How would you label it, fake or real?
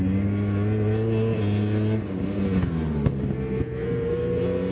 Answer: real